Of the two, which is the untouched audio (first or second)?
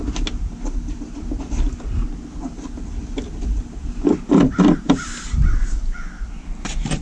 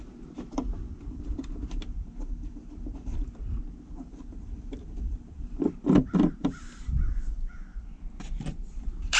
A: first